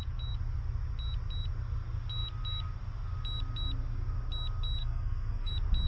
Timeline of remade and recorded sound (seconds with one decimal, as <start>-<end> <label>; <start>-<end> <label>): 0.0-4.8 recorded; 4.8-5.5 remade; 5.5-5.9 recorded